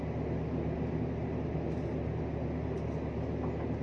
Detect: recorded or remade recorded